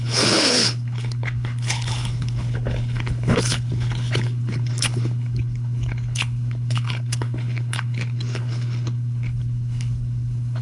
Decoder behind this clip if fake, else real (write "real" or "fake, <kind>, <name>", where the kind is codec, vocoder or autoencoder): fake, codec, HILCodec